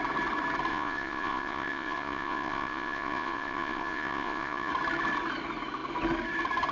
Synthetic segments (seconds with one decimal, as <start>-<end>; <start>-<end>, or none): 0.7-4.7